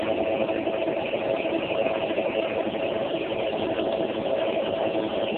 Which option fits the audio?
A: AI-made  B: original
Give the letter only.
B